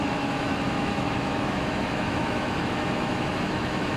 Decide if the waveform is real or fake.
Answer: fake